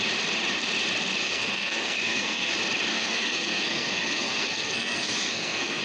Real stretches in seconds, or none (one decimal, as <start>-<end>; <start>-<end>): 0.0-1.2; 2.5-2.9